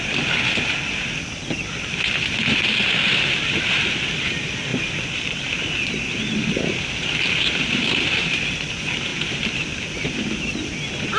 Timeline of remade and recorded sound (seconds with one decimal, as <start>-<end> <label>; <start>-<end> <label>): 0.0-11.2 recorded